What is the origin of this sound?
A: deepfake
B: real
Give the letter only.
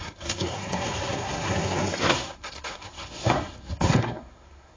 A